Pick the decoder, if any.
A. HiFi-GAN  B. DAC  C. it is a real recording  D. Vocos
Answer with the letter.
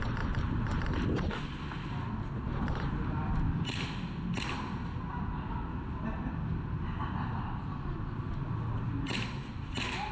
C